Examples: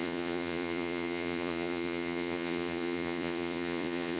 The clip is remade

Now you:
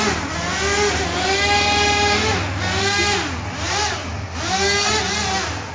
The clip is recorded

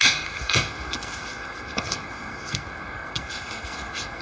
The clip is remade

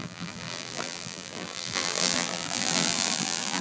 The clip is remade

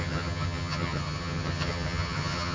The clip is remade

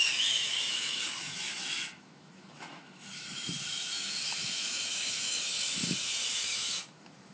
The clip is remade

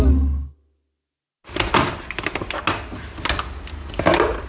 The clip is recorded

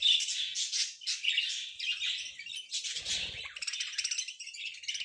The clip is recorded